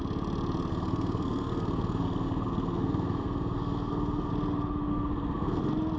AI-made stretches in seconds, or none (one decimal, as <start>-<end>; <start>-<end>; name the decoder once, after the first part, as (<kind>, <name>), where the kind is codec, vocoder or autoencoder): 0.7-4.3 (codec, SNAC); 4.9-5.6